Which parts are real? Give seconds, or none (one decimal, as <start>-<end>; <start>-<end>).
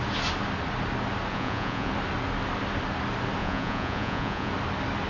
0.0-1.3; 1.9-3.4; 4.5-5.1